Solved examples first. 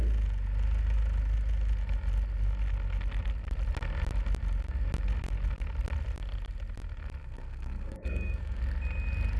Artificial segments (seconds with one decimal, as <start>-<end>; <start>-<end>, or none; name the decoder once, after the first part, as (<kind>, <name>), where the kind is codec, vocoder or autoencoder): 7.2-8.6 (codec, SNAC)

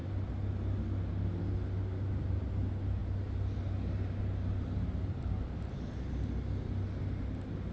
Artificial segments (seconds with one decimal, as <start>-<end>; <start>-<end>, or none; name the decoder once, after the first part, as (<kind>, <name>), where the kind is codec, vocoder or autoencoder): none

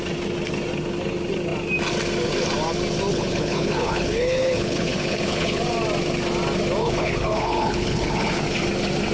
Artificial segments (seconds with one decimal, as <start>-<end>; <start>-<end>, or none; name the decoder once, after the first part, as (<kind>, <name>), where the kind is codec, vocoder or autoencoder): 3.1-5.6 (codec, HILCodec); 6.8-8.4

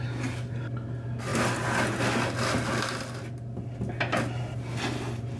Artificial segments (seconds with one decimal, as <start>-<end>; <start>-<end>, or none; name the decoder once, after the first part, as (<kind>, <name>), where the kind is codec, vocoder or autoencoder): none

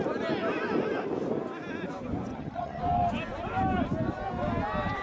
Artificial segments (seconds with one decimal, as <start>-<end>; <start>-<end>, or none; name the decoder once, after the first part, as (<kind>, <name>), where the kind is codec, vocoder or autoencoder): 2.3-2.8 (vocoder, HiFi-GAN)

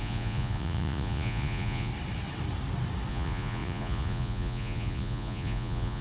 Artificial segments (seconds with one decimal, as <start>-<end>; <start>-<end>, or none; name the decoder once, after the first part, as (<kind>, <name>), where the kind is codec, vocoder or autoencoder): 0.0-1.9 (vocoder, Vocos); 3.1-6.0

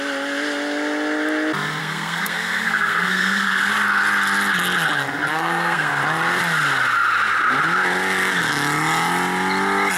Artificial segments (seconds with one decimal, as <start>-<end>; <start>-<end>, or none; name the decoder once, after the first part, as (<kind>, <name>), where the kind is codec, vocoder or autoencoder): 1.8-3.7 (codec, SNAC); 5.3-5.9

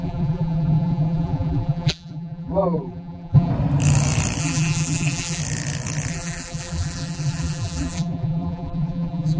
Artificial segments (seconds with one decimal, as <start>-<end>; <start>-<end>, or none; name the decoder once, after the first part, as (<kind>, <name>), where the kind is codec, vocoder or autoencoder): 0.0-3.5 (vocoder, BigVGAN v2); 4.4-5.4; 6.1-9.4